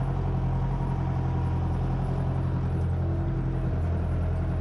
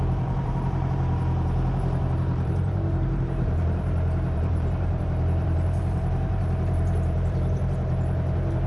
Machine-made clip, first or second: second